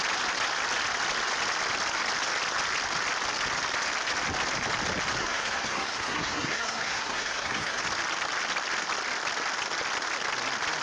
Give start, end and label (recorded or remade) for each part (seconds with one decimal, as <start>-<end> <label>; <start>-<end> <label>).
0.0-5.2 recorded; 5.2-7.8 remade; 7.8-10.8 recorded